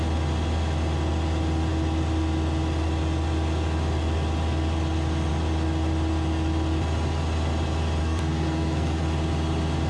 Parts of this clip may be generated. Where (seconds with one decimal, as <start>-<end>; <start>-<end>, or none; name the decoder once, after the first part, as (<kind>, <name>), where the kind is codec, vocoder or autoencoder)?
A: 8.0-9.0 (codec, SNAC)